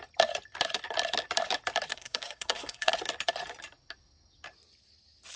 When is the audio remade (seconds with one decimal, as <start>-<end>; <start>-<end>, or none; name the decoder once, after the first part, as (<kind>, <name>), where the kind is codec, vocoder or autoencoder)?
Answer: 1.9-2.9 (codec, SNAC)